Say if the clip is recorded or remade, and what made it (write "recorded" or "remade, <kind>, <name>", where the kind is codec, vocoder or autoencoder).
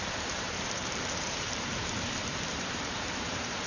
remade, vocoder, BigVGAN v2